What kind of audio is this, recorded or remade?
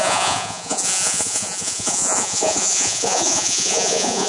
remade